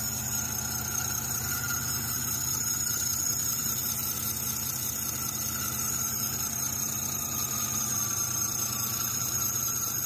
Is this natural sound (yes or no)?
yes